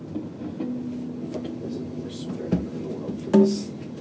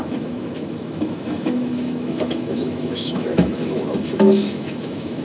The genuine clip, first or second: first